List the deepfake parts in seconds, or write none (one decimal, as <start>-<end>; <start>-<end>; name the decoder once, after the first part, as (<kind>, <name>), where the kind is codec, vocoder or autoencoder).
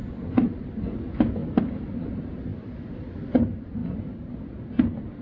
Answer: none